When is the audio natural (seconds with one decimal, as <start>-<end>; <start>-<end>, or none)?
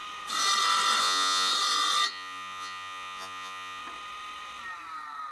0.0-1.0; 1.5-2.1; 3.8-5.3